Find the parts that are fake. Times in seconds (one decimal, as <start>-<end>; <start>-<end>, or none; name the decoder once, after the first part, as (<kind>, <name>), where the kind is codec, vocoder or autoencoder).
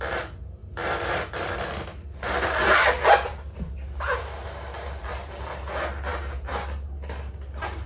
none